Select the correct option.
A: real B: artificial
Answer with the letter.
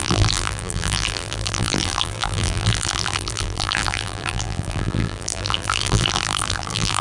B